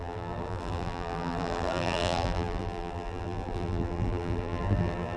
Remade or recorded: remade